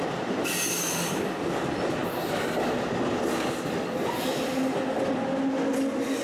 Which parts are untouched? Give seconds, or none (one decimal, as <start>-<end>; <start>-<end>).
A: 0.0-6.2